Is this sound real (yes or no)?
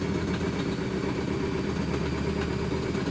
yes